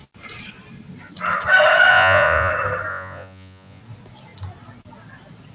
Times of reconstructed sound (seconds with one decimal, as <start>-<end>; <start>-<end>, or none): 1.9-2.5; 2.9-3.8